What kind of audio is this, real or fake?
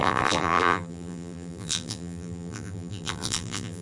fake